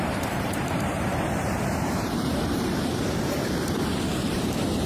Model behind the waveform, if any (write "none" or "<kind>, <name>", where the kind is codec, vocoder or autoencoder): vocoder, BigVGAN v2